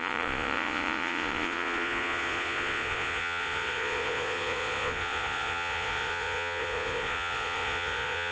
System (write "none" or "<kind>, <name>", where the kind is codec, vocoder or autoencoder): vocoder, Vocos